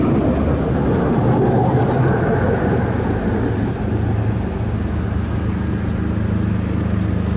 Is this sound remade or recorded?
recorded